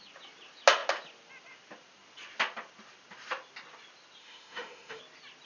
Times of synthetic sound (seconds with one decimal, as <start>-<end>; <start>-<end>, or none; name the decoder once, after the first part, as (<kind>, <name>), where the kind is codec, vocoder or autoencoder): 4.2-5.0 (autoencoder, DAC-VAE)